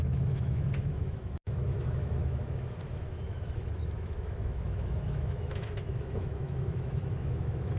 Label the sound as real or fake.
fake